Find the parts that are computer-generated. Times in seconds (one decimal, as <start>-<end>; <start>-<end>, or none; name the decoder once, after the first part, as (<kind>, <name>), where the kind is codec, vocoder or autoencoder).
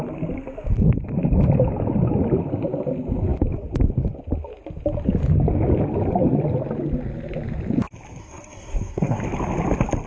8.2-9.2 (codec, SNAC)